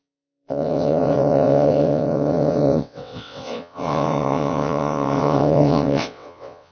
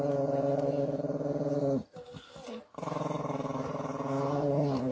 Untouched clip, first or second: second